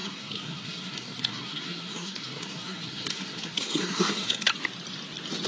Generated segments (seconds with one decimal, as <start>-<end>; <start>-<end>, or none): 0.0-4.5